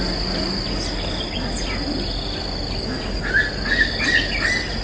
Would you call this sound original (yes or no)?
yes